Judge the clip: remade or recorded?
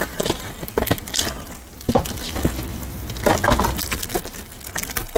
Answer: recorded